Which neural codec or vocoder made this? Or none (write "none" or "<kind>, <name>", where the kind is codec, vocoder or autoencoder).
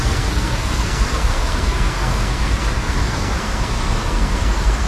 codec, SNAC